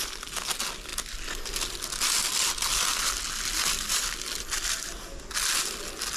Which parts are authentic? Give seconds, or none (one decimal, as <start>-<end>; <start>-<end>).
0.0-6.2